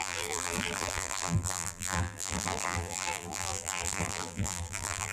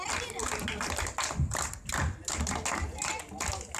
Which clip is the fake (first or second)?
first